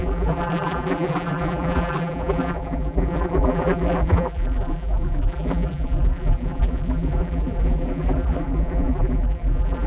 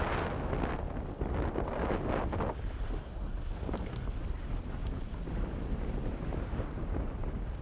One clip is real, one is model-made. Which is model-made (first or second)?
first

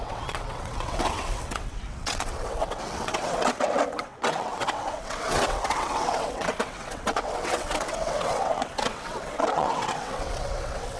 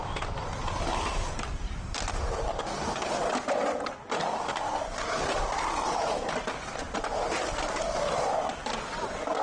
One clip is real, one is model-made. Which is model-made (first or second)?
first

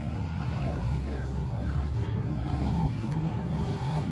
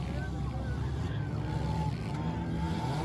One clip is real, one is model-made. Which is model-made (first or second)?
first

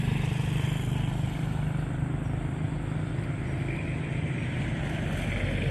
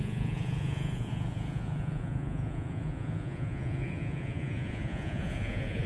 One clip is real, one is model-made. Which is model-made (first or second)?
second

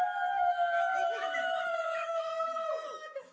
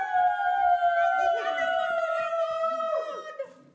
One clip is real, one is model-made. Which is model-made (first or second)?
first